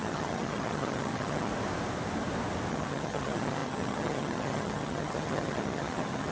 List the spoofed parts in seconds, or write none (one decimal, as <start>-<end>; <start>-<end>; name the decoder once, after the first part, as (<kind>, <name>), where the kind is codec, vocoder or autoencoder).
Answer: 0.0-1.5 (vocoder, HiFi-GAN); 2.7-6.3